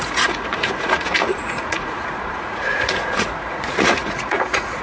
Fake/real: fake